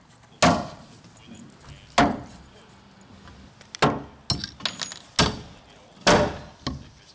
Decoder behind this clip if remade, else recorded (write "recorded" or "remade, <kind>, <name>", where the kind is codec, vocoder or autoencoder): recorded